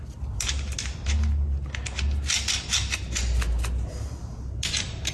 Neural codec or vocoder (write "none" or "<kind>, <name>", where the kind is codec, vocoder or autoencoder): none